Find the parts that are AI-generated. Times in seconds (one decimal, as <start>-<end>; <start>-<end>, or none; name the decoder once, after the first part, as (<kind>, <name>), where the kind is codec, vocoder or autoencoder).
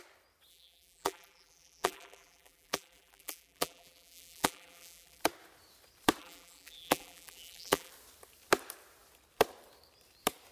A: 0.5-5.2 (vocoder, BigVGAN v2); 6.2-7.9